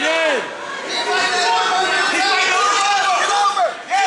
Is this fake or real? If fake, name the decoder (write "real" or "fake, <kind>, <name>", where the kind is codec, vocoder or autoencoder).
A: real